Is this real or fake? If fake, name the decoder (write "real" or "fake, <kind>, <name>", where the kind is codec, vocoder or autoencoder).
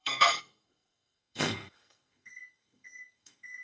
fake, codec, SNAC